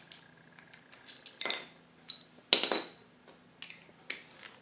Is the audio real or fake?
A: real